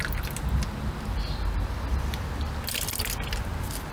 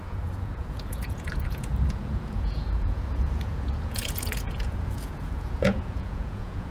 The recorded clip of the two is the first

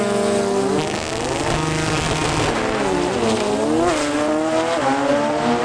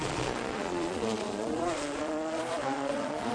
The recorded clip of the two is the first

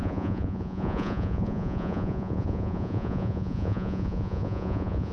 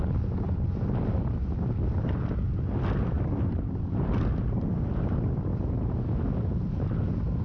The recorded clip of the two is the second